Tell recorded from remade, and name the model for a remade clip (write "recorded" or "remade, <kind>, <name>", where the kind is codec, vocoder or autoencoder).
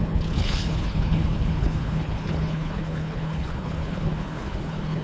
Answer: remade, codec, HILCodec